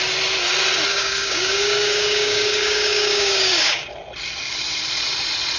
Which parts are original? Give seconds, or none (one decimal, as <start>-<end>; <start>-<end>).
0.0-0.9; 3.9-5.6